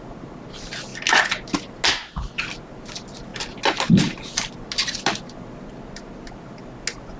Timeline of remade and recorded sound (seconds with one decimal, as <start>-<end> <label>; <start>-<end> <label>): 0.0-7.2 recorded